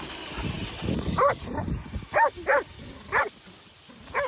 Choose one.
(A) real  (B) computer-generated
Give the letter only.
A